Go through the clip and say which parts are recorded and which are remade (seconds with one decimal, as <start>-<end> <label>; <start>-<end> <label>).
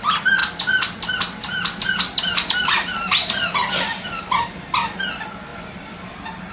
0.0-2.9 recorded; 2.9-4.0 remade; 4.0-5.5 recorded; 5.5-6.1 remade; 6.1-6.5 recorded